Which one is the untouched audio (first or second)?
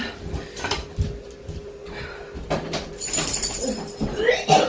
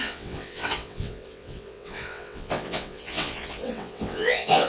first